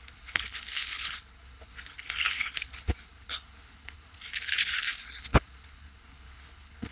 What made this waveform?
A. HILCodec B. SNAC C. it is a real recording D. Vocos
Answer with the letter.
A